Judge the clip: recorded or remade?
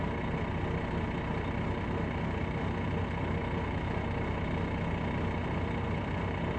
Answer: recorded